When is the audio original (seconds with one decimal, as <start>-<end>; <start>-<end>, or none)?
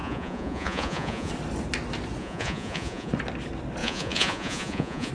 1.3-2.2; 3.1-3.8